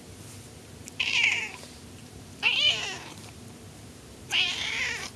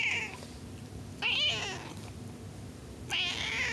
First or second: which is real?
second